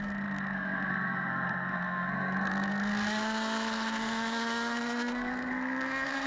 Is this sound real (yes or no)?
no